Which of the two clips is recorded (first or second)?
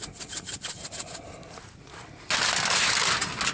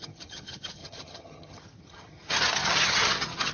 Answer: first